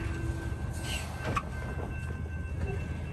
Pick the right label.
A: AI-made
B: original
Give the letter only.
B